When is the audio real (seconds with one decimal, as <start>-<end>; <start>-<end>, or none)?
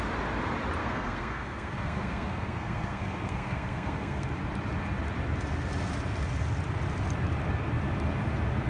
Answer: 0.0-0.8; 4.3-8.7